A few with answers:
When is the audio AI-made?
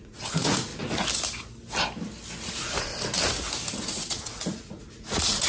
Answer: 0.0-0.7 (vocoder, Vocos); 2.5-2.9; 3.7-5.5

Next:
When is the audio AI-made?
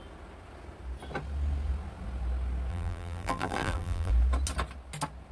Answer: 2.7-4.1 (vocoder, BigVGAN v2)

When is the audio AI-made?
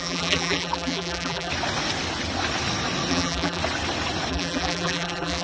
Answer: 0.0-1.5 (vocoder, BigVGAN v2); 3.1-3.6; 4.3-5.4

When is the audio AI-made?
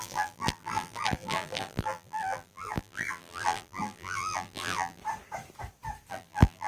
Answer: 0.0-5.0 (vocoder, BigVGAN v2); 6.1-6.7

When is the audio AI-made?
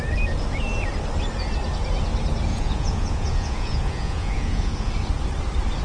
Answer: 2.5-4.9 (vocoder, Vocos)